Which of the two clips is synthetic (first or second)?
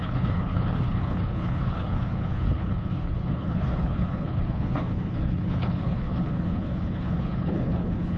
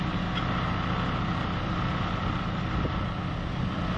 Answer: first